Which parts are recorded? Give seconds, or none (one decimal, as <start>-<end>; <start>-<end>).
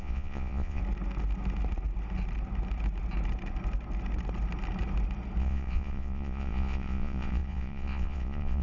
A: 0.8-5.4